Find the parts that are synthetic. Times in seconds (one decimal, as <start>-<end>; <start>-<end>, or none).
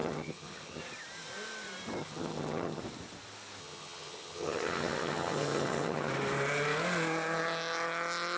0.0-0.8; 2.0-2.8; 3.6-6.1